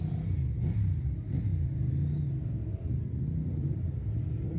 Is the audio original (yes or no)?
yes